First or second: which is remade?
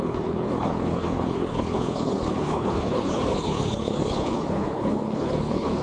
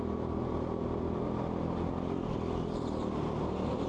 first